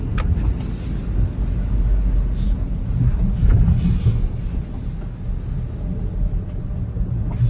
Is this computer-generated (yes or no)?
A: no